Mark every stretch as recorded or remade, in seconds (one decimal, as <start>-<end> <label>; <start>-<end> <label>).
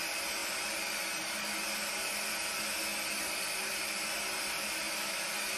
0.0-2.9 recorded; 2.9-4.8 remade; 4.8-5.6 recorded